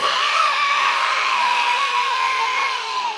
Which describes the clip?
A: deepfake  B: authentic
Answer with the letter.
A